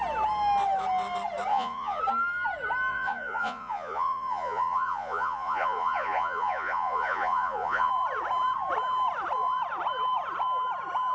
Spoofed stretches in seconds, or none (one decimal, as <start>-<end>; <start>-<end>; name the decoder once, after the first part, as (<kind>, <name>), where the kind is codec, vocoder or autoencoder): 1.5-2.0 (vocoder, Vocos); 2.9-7.9